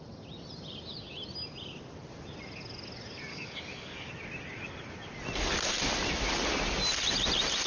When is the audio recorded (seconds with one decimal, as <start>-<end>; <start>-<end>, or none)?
0.0-3.3; 4.1-7.7